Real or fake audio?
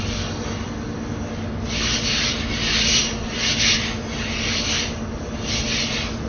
real